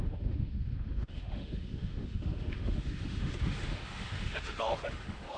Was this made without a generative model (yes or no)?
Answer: no